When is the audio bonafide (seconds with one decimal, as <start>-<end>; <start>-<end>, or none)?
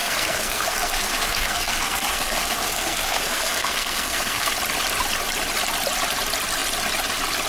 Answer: 4.5-7.5